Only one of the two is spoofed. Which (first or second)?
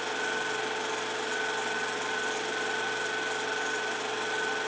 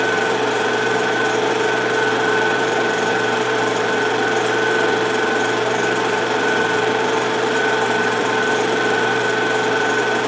second